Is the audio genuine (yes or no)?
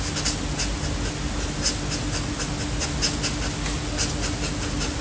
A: yes